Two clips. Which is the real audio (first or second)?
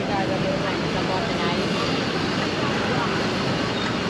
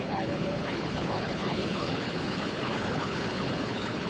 first